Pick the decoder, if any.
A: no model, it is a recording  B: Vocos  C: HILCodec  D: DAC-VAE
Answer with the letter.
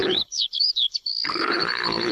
C